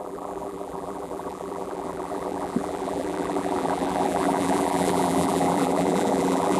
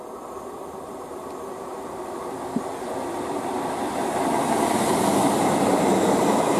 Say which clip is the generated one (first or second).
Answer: first